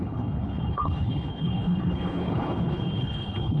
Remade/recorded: remade